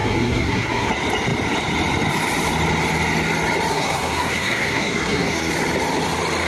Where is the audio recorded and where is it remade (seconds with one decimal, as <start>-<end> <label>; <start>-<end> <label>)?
0.0-0.9 remade; 0.9-3.7 recorded; 3.7-5.5 remade; 5.5-6.5 recorded